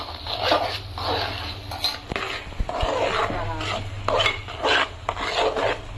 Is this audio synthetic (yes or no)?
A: no